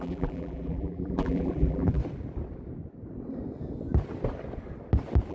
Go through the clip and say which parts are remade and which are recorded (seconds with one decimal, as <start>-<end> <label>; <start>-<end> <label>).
0.0-2.0 remade; 2.0-5.3 recorded